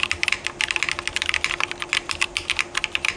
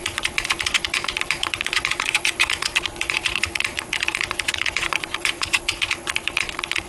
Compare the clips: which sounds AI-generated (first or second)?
second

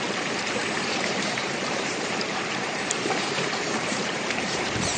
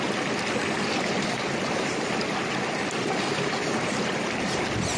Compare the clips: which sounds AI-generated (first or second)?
first